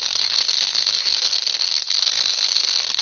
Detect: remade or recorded remade